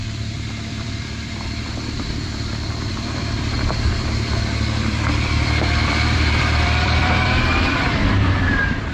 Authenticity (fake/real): fake